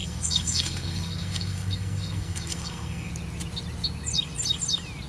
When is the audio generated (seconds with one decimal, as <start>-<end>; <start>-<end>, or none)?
0.0-3.1